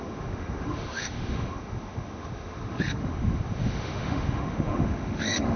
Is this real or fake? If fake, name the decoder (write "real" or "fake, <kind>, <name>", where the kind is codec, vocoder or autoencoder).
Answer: fake, autoencoder, DAC-VAE